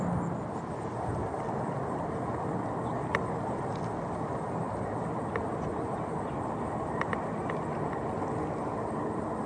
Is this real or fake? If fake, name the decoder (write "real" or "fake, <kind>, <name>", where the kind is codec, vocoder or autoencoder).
real